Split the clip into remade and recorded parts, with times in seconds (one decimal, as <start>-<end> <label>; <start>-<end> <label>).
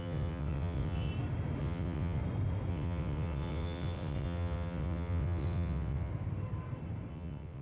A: 0.0-1.1 remade; 1.1-1.6 recorded; 1.6-2.2 remade; 2.2-2.7 recorded; 2.7-6.1 remade; 6.1-7.1 recorded; 7.1-7.6 remade